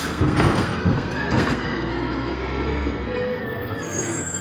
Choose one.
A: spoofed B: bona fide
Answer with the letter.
A